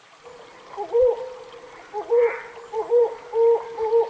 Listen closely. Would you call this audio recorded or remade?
recorded